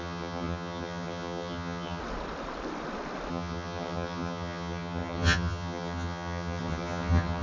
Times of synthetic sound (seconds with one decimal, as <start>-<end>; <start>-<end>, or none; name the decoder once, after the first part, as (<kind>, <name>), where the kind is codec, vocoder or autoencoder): 0.0-2.0 (vocoder, HiFi-GAN); 3.3-7.4